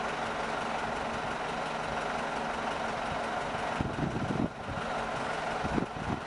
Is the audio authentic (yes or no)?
yes